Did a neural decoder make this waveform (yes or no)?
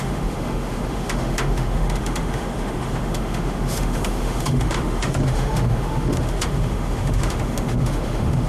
yes